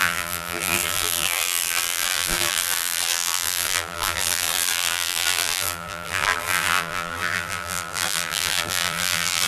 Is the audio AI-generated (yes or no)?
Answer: yes